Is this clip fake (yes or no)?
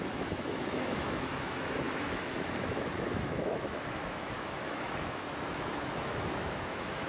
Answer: yes